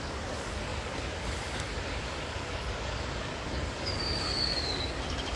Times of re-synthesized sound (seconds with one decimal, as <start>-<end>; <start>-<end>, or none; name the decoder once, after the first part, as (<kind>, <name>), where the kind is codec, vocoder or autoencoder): 0.0-5.4 (codec, DAC)